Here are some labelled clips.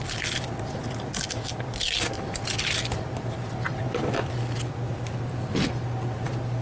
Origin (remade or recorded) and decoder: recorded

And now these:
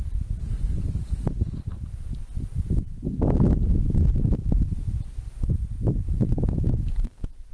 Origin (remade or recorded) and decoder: recorded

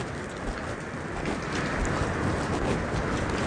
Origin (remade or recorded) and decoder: recorded